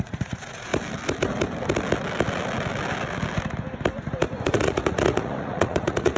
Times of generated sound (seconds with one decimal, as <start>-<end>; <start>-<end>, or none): 0.0-0.7; 4.4-6.2